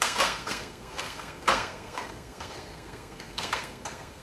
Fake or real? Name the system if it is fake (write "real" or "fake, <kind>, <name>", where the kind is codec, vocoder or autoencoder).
fake, codec, SNAC